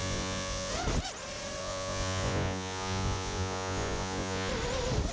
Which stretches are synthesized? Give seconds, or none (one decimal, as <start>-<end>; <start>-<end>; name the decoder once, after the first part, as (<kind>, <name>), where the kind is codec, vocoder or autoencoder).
0.0-0.7 (vocoder, Vocos); 1.6-4.5